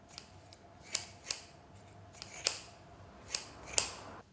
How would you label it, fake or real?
real